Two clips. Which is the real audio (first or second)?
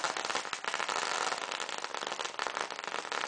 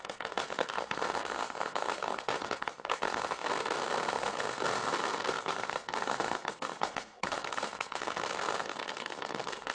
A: first